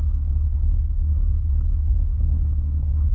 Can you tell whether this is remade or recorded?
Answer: remade